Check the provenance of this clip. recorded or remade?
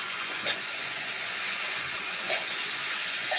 remade